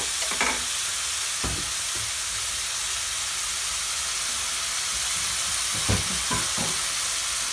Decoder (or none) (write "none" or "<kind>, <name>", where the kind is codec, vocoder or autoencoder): none